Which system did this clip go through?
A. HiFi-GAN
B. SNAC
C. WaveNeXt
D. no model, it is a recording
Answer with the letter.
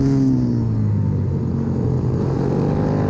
D